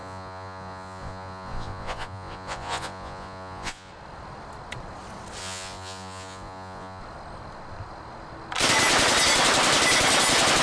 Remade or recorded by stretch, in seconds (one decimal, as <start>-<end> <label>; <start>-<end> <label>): 0.0-3.9 remade; 3.9-5.4 recorded; 5.4-7.0 remade; 7.0-10.6 recorded